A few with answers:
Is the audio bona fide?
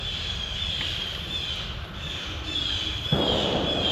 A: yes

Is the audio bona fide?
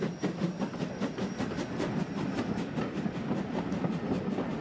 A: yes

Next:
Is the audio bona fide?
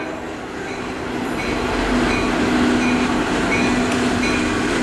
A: yes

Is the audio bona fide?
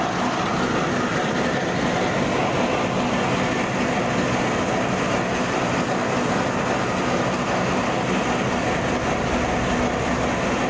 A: yes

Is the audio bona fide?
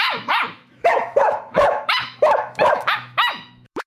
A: no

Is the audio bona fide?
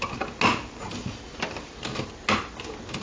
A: yes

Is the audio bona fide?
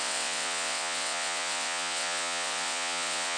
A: no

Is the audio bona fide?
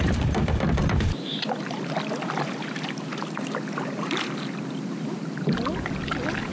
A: yes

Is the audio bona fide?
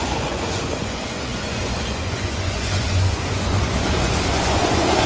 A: no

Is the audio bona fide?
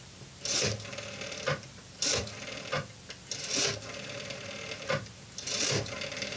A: yes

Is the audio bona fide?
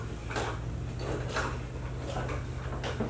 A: yes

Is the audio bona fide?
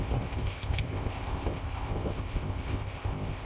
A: no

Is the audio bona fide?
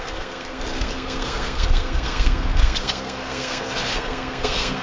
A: no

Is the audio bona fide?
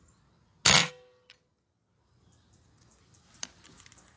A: yes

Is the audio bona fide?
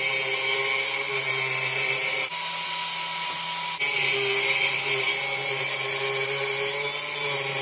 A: yes